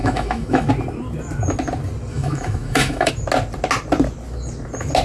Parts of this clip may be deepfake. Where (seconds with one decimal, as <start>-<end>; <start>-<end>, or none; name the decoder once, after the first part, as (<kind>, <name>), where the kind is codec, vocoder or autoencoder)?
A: 0.0-0.7 (autoencoder, DAC-VAE); 2.1-3.1